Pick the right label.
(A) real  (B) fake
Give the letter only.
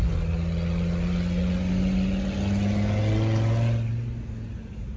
A